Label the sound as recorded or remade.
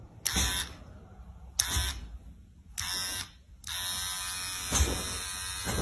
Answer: recorded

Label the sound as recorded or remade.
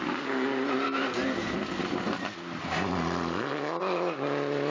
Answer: recorded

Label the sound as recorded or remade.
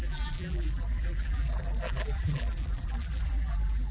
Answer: remade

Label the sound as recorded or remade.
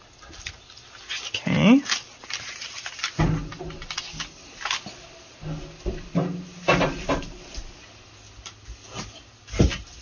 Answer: recorded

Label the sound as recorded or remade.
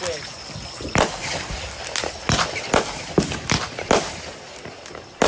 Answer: recorded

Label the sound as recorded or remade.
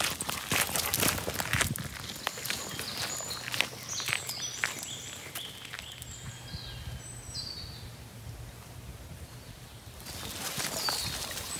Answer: recorded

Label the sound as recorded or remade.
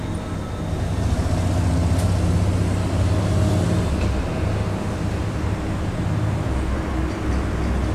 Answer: recorded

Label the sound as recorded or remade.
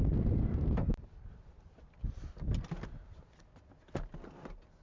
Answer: recorded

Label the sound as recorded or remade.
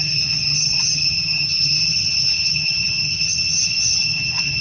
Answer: remade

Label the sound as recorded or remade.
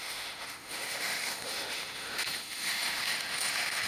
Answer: remade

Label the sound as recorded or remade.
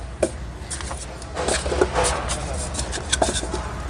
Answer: recorded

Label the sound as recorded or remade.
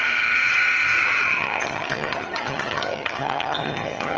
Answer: remade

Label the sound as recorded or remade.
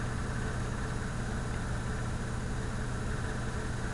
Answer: recorded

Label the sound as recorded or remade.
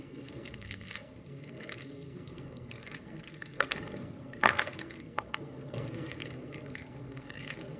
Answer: remade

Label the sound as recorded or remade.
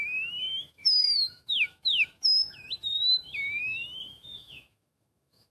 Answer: remade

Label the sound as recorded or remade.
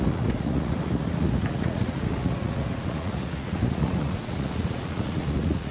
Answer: remade